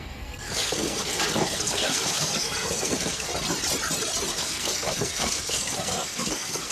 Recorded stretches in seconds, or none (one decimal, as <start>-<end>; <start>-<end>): 3.3-4.3

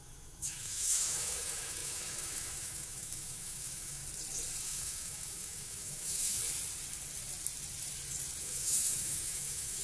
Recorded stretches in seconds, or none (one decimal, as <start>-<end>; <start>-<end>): 4.0-4.6; 6.4-8.4

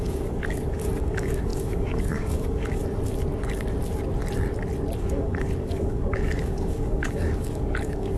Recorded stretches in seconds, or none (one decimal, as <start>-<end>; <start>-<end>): 2.8-5.0

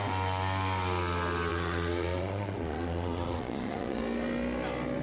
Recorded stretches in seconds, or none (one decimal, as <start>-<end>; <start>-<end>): 0.0-1.5; 4.0-5.0

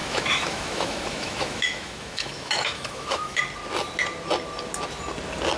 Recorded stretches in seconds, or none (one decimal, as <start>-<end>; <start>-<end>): 3.4-5.6

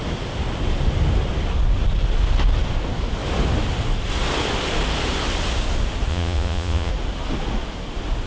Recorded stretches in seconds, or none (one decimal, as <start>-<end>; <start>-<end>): 0.0-6.1; 6.9-8.3